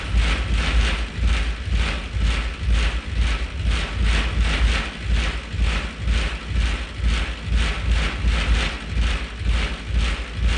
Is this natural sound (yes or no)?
yes